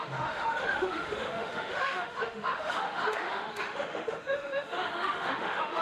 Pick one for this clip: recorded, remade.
remade